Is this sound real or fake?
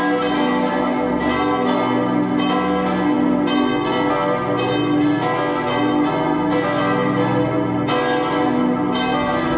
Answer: real